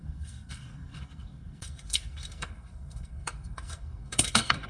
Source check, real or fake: fake